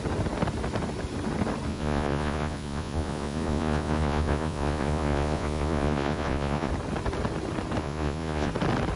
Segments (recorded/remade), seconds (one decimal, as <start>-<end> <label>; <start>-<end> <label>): 0.0-1.7 recorded; 1.7-6.7 remade; 6.7-7.8 recorded; 7.8-8.5 remade; 8.5-9.0 recorded